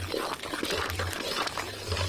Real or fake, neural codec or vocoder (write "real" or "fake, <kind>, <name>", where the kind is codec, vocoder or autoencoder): real